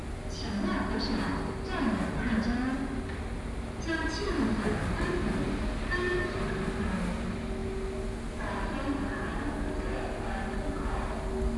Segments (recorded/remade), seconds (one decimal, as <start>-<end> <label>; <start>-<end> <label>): 0.0-3.9 recorded; 3.9-6.5 remade; 6.5-11.6 recorded